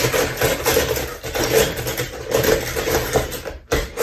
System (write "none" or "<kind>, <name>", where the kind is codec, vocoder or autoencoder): none